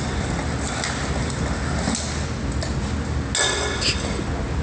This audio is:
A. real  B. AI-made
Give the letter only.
A